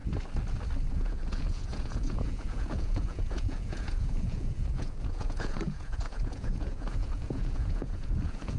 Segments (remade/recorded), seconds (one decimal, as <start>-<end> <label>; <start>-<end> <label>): 0.0-0.9 recorded; 0.9-8.6 remade

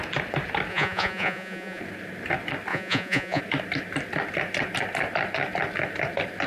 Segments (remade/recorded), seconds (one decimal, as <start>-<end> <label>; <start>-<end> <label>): 0.0-0.7 recorded; 0.7-1.8 remade; 1.8-2.7 recorded; 2.7-3.4 remade; 3.4-6.5 recorded

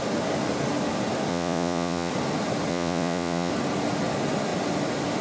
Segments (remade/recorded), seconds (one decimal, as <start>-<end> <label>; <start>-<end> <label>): 0.0-1.3 recorded; 1.3-2.1 remade; 2.1-2.7 recorded; 2.7-3.5 remade; 3.5-5.2 recorded

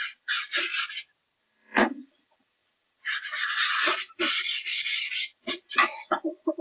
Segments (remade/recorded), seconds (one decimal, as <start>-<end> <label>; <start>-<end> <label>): 0.0-0.7 remade; 0.7-1.4 recorded; 1.4-6.6 remade

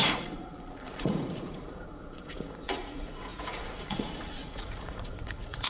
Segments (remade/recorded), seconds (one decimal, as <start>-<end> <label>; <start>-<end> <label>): 0.0-5.7 remade

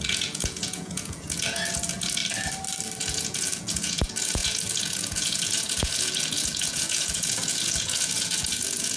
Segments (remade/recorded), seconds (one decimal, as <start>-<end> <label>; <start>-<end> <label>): 0.0-2.2 remade; 2.2-3.0 recorded; 3.0-9.0 remade

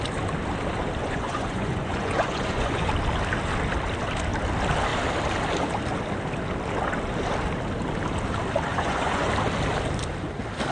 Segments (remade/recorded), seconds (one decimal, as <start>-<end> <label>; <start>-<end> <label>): 0.0-1.0 recorded; 1.0-2.9 remade; 2.9-8.7 recorded; 8.7-9.3 remade; 9.3-10.7 recorded